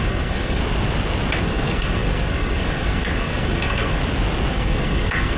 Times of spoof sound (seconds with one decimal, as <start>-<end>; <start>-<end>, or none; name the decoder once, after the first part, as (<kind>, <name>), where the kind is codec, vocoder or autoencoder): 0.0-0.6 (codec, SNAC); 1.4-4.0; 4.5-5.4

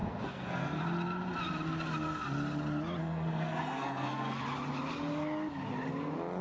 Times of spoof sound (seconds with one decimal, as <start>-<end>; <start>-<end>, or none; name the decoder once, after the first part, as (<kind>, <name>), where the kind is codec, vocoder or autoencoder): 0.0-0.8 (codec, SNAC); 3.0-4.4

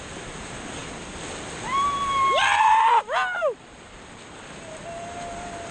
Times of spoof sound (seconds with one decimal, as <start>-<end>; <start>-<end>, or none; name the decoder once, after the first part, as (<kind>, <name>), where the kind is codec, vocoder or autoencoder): none

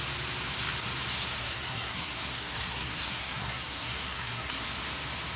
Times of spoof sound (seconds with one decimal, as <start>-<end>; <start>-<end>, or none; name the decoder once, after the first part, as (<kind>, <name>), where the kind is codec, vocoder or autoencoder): 1.4-4.6 (codec, SNAC)